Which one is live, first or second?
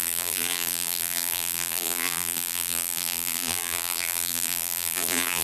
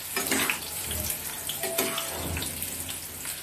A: second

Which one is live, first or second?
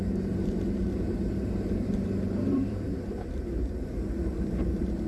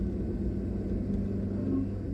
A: second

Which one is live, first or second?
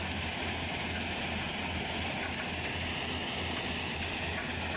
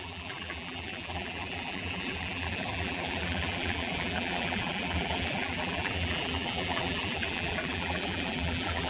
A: first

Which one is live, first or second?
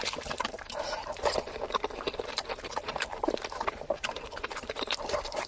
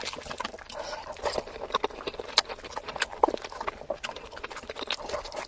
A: second